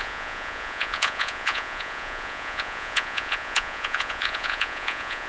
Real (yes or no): no